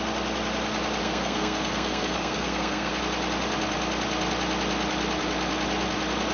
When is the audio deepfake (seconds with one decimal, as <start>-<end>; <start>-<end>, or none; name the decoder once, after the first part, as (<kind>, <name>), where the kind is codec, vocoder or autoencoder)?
1.0-3.0 (codec, SNAC)